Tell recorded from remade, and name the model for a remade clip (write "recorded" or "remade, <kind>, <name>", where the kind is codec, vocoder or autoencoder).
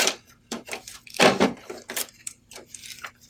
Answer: remade, vocoder, BigVGAN v2